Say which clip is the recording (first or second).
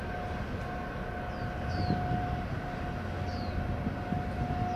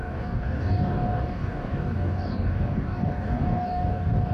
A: first